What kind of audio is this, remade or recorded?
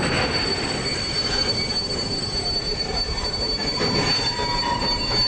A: recorded